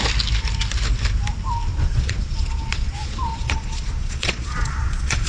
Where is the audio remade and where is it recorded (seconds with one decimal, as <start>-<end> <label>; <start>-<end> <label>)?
0.0-1.7 recorded; 1.7-5.3 remade